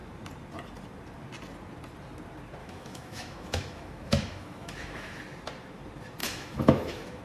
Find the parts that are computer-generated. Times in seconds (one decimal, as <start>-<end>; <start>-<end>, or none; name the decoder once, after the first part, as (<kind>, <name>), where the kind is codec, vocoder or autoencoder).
2.6-5.2 (autoencoder, DAC-VAE); 6.2-7.2